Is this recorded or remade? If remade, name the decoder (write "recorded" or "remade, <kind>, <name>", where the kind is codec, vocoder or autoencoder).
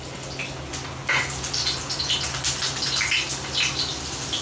recorded